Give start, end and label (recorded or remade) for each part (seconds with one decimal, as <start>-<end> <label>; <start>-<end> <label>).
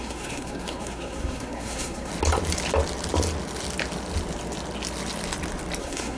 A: 0.0-2.1 remade; 2.1-5.8 recorded; 5.8-6.2 remade